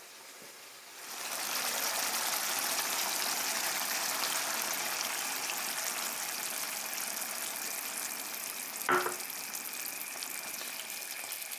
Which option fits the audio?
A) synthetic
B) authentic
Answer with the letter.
B